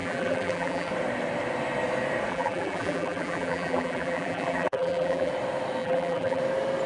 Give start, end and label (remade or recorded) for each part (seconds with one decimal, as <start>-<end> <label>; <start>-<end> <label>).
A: 0.0-0.9 remade; 0.9-2.3 recorded; 2.3-5.3 remade; 5.3-5.8 recorded; 5.8-6.4 remade; 6.4-6.9 recorded